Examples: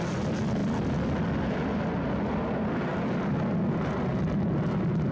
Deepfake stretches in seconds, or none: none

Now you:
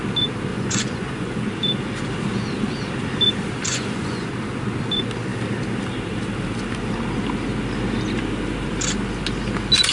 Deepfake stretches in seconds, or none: 0.5-1.5; 3.7-4.3

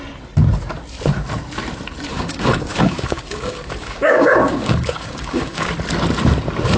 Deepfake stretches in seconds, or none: 2.1-5.7

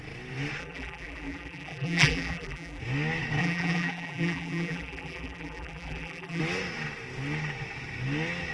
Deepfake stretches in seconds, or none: 0.6-2.8; 3.4-6.4

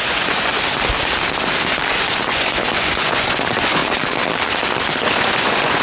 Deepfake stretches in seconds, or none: 0.0-0.5; 1.9-3.8; 5.0-5.8

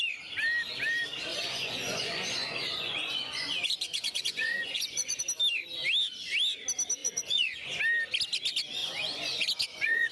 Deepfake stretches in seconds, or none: 1.3-5.2; 7.0-7.8; 8.8-10.1

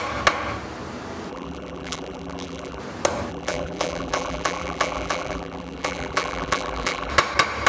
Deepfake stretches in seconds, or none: 1.3-2.8; 3.3-7.1

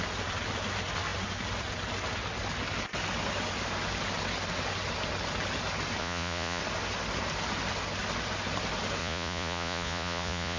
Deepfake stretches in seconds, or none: 6.0-6.6; 9.0-10.6